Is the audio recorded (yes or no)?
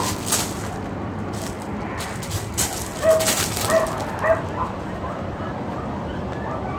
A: yes